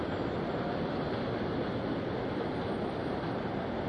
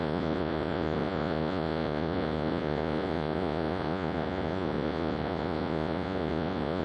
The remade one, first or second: second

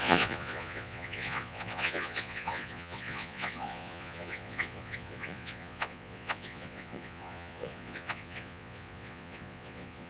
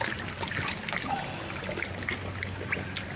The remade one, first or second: first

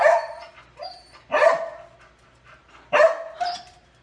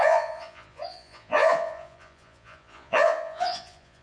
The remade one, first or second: second